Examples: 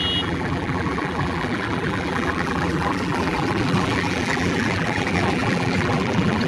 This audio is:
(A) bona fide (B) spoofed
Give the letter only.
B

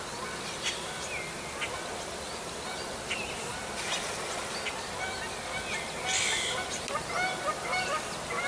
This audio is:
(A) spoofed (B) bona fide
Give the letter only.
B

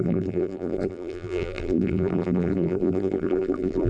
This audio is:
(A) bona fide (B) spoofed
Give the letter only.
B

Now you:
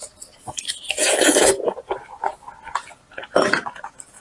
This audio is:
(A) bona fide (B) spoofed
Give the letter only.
A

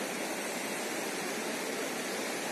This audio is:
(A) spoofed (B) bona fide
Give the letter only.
B